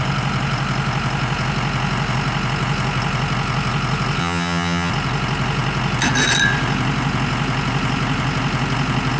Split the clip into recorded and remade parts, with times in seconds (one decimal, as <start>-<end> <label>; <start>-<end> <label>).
0.0-4.2 recorded; 4.2-4.9 remade; 4.9-9.2 recorded